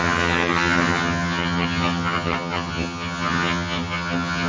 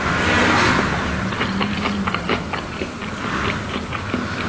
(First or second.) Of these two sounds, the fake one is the first